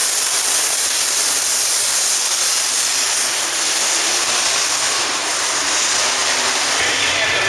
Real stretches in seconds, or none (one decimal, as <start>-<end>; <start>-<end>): 4.3-6.2; 7.0-7.5